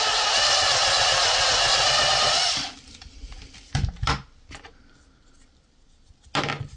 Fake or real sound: real